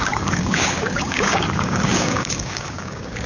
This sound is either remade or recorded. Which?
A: remade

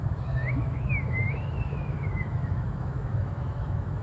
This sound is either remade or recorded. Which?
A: remade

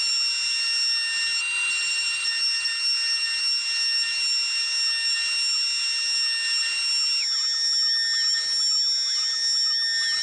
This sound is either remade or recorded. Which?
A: recorded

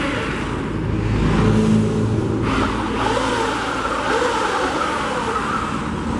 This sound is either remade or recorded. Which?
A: recorded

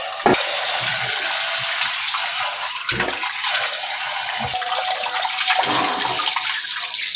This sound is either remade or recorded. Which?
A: recorded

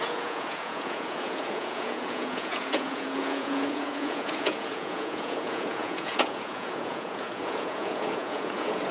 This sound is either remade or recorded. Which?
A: remade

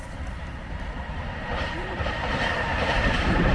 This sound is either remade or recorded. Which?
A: remade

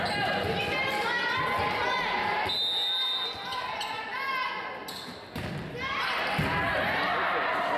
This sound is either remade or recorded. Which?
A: recorded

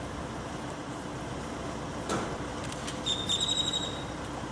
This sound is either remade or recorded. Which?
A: recorded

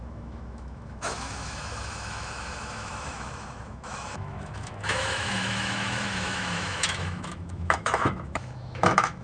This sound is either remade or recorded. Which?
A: remade